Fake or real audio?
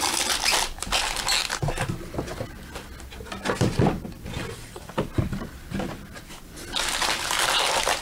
real